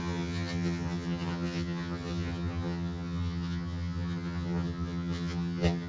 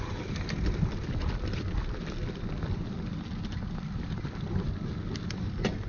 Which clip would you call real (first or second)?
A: second